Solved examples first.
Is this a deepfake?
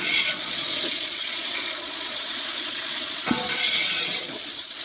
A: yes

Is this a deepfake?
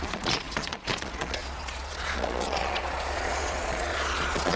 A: yes